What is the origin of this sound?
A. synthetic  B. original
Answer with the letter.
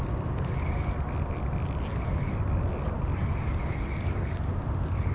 B